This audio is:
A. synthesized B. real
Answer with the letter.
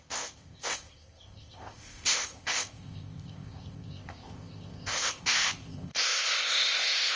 A